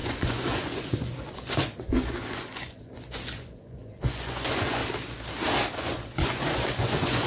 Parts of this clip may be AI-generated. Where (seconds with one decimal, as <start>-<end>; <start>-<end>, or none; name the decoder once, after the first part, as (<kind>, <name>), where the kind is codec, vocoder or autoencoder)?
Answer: 0.0-4.8 (vocoder, Vocos); 5.7-7.3